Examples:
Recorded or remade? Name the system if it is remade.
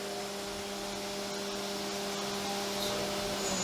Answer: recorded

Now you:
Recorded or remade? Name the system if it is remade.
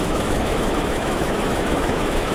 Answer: remade, autoencoder, DAC-VAE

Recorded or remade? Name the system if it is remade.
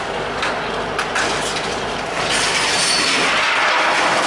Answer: recorded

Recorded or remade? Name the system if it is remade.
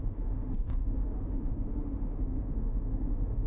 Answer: remade, autoencoder, DAC-VAE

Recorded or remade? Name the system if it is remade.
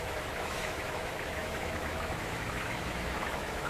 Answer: remade, autoencoder, DAC-VAE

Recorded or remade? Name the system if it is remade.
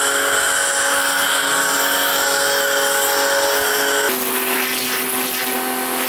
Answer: recorded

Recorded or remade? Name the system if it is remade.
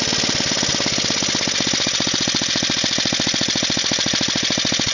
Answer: recorded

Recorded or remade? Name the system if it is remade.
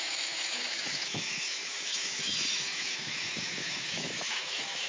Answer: remade, autoencoder, DAC-VAE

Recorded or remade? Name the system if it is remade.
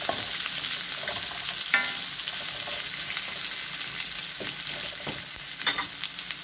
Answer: recorded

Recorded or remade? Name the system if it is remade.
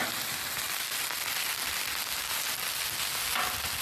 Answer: recorded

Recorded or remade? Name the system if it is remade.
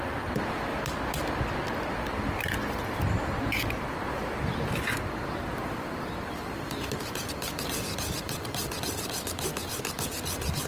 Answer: recorded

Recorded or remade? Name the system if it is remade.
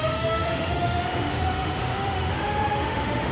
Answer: remade, autoencoder, DAC-VAE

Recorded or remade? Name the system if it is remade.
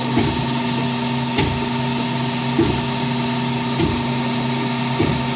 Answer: recorded